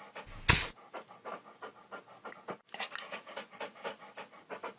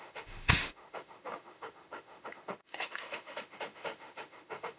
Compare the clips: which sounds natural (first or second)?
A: first